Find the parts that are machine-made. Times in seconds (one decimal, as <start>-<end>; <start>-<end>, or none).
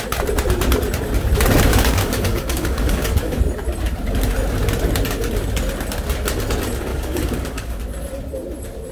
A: 1.7-3.4; 6.9-7.8